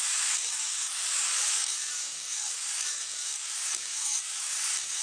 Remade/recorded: remade